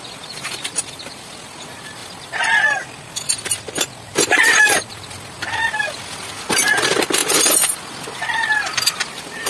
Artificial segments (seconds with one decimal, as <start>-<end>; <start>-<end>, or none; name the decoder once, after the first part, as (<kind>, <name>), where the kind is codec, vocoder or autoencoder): none